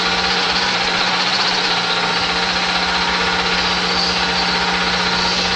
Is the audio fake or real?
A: real